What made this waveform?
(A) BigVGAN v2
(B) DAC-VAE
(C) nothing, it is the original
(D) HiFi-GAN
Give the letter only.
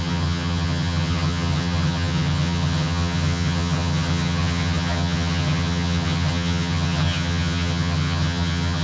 D